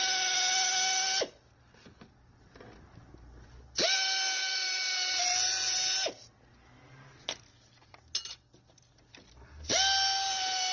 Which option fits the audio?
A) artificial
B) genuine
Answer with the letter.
B